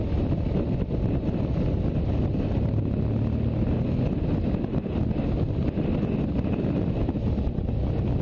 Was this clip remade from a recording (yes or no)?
no